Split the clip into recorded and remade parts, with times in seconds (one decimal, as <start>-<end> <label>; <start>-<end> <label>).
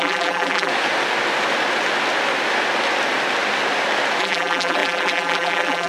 0.0-0.7 remade; 0.7-4.2 recorded; 4.2-5.9 remade